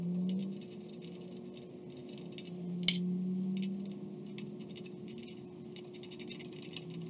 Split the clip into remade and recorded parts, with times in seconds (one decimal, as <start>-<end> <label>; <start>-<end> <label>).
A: 0.0-7.1 recorded